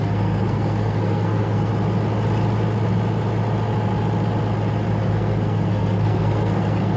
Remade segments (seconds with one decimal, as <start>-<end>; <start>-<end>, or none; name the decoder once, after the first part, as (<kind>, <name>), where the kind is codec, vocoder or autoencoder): 0.0-1.7 (codec, SNAC); 5.1-7.0